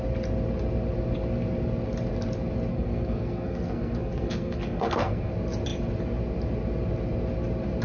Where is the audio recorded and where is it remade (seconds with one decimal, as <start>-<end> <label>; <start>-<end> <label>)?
0.0-2.7 recorded; 2.7-5.3 remade; 5.3-7.8 recorded